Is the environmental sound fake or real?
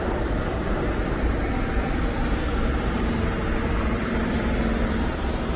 fake